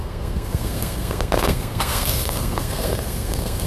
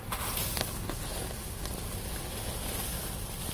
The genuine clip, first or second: second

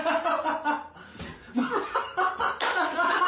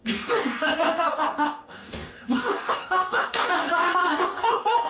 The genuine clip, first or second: first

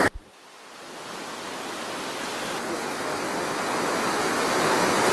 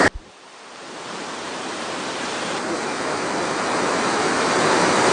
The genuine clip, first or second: first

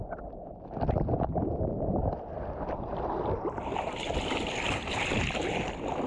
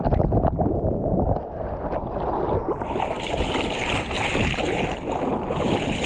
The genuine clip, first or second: second